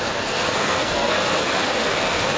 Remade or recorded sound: remade